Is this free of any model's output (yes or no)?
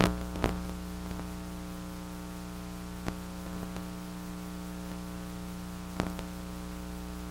yes